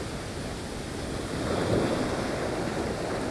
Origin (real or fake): real